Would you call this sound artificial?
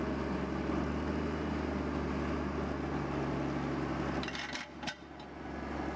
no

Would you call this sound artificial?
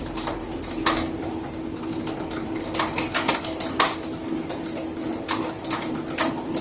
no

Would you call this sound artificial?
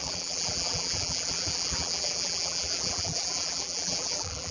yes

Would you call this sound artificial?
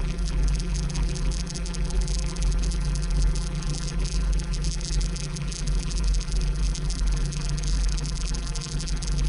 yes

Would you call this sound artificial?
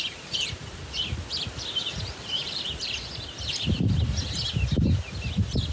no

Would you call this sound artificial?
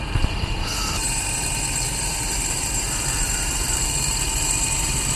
yes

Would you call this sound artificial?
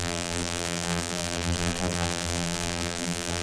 yes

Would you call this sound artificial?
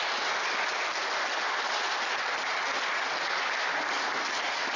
no